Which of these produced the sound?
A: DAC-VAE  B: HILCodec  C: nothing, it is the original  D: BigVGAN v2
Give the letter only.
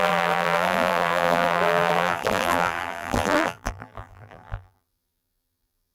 D